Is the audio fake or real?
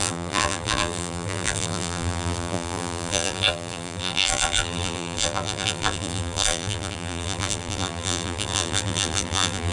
fake